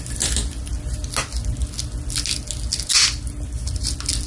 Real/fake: real